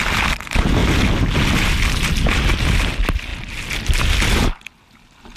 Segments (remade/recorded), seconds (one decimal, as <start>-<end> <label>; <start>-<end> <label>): 0.0-5.4 recorded